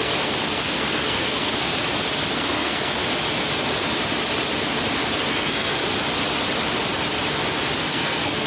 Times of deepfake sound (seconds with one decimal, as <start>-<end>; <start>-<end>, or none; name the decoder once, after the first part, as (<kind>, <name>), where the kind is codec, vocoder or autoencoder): 0.0-1.7 (codec, SNAC); 2.3-3.0; 5.3-5.8; 7.8-8.5